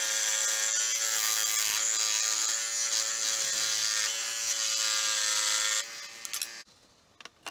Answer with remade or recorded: recorded